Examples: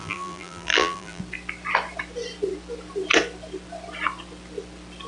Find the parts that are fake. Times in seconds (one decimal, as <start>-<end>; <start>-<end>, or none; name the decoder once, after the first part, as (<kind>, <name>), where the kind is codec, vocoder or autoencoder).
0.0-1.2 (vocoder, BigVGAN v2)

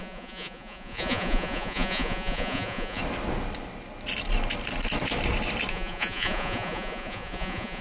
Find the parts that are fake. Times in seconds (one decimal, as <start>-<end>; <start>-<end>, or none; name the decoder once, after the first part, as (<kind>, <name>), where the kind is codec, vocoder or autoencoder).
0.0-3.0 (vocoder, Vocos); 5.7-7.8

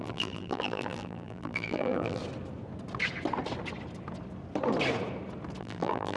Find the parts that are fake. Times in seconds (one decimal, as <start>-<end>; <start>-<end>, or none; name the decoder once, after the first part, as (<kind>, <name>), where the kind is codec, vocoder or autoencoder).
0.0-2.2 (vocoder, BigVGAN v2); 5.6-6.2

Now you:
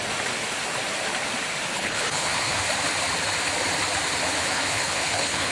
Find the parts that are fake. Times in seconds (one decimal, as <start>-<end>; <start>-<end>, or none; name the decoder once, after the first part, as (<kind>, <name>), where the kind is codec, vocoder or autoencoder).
1.7-2.6 (codec, HILCodec); 4.4-5.5

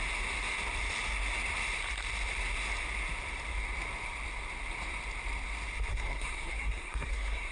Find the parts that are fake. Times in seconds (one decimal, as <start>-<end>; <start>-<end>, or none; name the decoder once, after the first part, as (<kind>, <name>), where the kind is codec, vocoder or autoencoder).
5.9-7.5 (codec, SNAC)

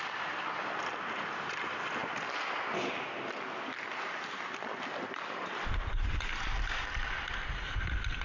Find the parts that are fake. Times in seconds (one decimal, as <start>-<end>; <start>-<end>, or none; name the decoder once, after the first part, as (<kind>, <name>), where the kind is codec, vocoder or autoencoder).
none